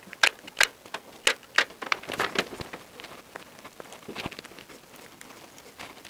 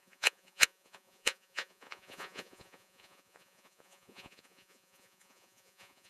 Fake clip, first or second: second